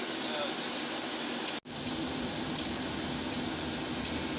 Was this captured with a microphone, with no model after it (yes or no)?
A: yes